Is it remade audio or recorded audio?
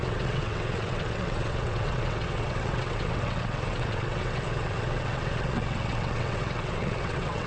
remade